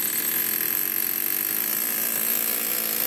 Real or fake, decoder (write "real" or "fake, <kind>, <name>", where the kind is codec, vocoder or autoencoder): real